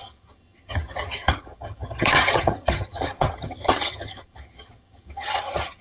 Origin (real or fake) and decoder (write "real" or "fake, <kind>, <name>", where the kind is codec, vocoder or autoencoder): fake, vocoder, HiFi-GAN